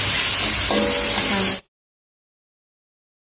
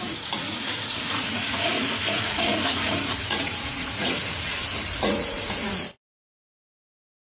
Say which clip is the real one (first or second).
first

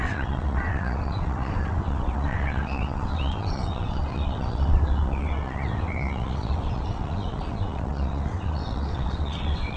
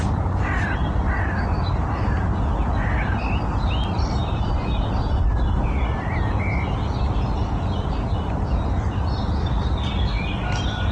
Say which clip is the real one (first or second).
second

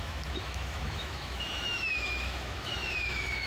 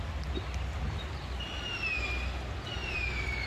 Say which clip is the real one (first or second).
second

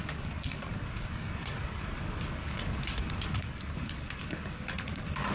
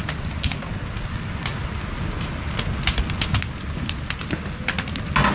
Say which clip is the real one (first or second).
second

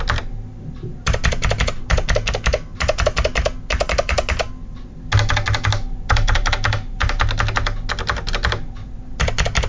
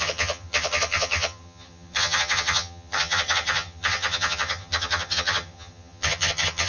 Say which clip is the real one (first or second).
first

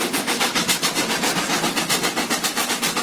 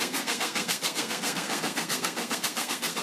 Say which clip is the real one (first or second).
first